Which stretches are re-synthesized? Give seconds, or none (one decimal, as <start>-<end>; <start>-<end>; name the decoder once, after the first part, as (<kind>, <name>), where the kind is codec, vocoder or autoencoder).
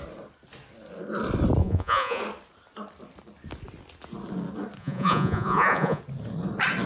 1.6-2.2 (vocoder, Vocos); 4.8-6.0